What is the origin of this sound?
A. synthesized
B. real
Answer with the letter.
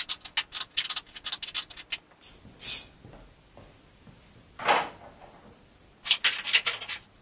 B